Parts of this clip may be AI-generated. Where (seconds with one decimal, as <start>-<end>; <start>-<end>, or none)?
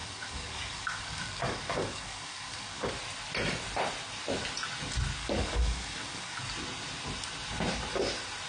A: 0.0-2.9; 5.2-6.4